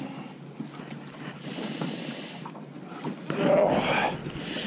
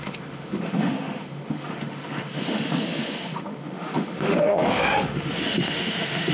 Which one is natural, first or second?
first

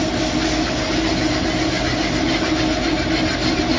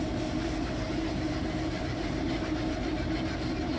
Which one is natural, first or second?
first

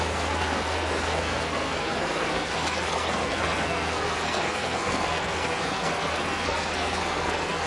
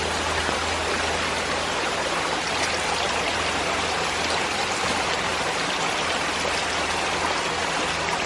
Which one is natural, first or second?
second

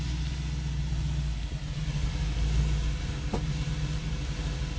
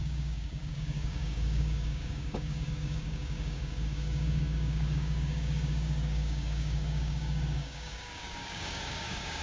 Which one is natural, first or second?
first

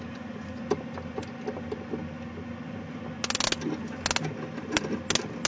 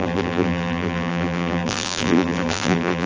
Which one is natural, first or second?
first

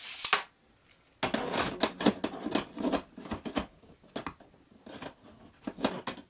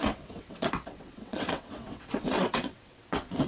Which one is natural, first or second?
first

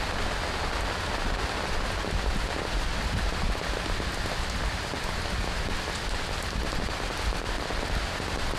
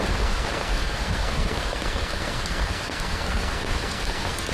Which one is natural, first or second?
first